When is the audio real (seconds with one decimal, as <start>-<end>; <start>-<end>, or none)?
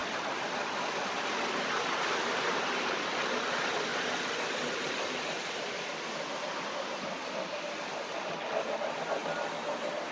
0.0-10.1